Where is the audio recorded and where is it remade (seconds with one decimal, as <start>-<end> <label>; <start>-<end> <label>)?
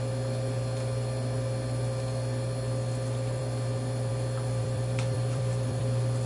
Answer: 0.0-4.6 recorded; 4.6-5.8 remade; 5.8-6.3 recorded